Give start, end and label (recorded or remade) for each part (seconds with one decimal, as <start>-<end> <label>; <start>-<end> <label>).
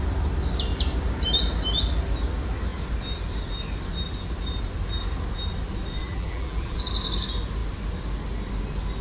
0.0-6.0 recorded; 6.0-6.8 remade; 6.8-9.0 recorded